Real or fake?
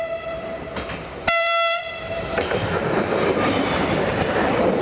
real